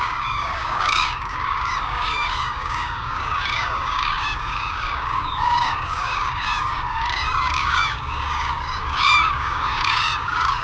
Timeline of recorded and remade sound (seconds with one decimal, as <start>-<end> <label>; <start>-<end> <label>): 0.0-10.6 remade